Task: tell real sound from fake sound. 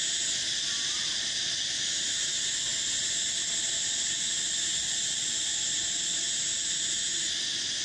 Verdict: real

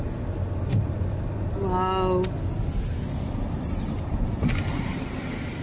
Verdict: real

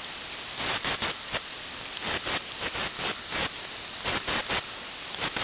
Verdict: real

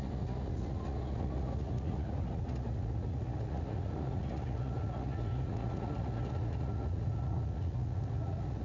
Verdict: fake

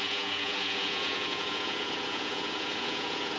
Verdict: fake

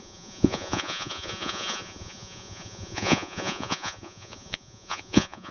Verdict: fake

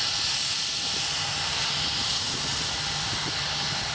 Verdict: real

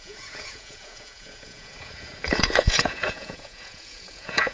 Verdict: fake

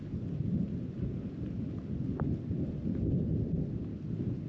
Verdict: real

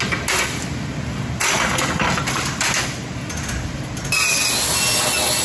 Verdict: real